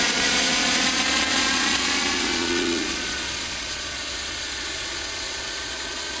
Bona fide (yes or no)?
no